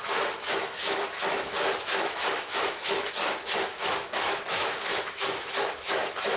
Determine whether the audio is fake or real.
fake